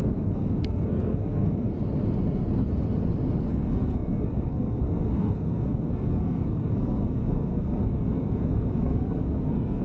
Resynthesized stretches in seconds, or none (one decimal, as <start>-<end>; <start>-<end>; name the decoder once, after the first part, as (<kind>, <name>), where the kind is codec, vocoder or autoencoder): 0.0-1.7 (codec, SNAC); 3.5-9.8